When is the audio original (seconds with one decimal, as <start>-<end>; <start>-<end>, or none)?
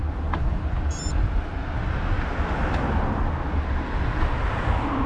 0.0-5.1